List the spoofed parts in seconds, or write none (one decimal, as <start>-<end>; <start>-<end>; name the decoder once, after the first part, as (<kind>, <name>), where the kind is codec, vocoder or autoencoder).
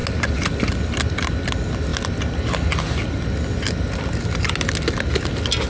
none